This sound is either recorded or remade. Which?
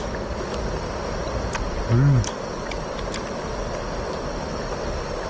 recorded